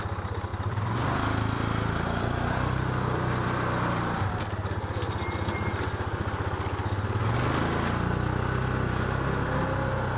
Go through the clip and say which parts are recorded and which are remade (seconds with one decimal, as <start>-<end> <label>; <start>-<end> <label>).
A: 0.0-0.5 recorded; 0.5-4.4 remade; 4.4-10.2 recorded

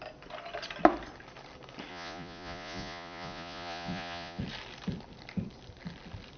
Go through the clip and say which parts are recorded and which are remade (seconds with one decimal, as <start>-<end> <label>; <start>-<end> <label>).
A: 0.0-1.9 recorded; 1.9-4.4 remade; 4.4-6.4 recorded

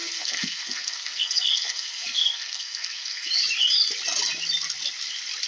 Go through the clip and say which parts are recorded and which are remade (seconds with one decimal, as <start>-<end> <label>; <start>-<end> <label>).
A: 0.0-3.3 remade; 3.3-5.5 recorded

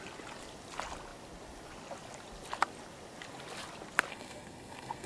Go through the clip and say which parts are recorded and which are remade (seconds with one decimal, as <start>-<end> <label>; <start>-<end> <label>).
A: 0.0-4.1 recorded; 4.1-5.1 remade

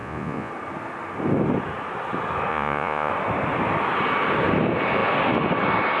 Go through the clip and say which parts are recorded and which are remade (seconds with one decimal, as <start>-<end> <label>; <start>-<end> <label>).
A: 0.0-0.5 remade; 0.5-2.5 recorded; 2.5-3.1 remade; 3.1-6.0 recorded

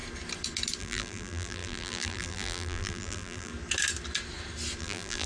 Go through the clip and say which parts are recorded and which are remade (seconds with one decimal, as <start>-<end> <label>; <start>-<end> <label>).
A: 0.0-0.8 recorded; 0.8-3.5 remade; 3.5-4.8 recorded; 4.8-5.3 remade

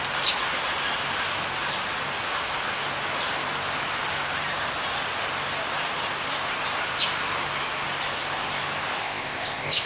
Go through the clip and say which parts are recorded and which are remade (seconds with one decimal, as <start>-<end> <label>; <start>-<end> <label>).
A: 0.0-9.0 recorded; 9.0-9.9 remade